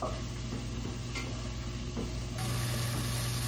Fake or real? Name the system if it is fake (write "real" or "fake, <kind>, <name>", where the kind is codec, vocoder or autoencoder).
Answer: real